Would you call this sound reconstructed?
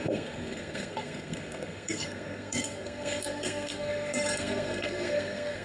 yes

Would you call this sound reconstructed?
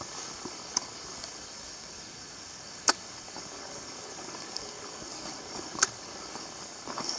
yes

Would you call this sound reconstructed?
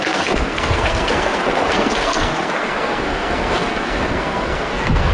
yes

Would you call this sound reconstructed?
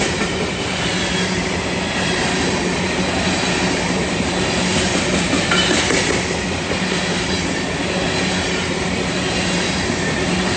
no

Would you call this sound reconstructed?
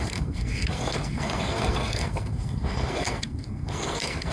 yes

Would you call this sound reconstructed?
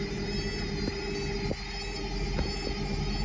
no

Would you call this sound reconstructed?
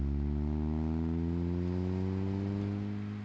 no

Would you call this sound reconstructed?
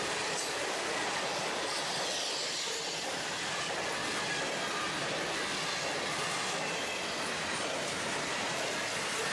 no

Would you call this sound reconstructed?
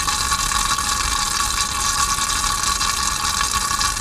no